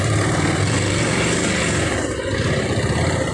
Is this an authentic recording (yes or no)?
no